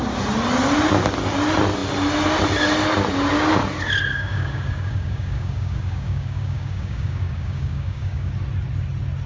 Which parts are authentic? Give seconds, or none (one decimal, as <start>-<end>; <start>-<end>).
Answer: 0.0-4.1; 8.3-9.3